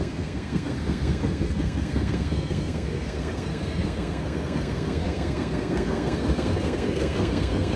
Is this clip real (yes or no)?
no